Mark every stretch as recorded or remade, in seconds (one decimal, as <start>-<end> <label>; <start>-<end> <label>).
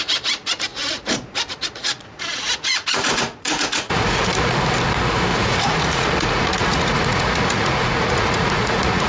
0.0-0.7 recorded; 0.7-4.6 remade; 4.6-5.3 recorded; 5.3-9.1 remade